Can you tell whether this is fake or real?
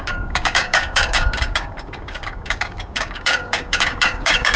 fake